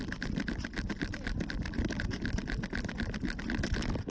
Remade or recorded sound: recorded